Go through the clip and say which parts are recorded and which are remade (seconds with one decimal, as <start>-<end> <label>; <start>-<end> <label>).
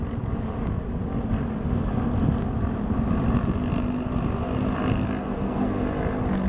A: 0.0-5.2 recorded; 5.2-5.8 remade; 5.8-6.5 recorded